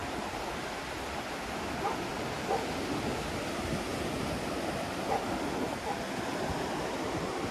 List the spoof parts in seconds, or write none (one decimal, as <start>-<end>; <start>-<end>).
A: none